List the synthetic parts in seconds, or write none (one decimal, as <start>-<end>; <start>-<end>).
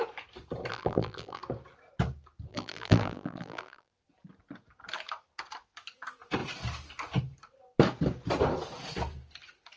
0.7-1.4; 2.5-3.9